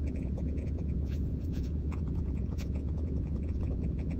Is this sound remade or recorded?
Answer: remade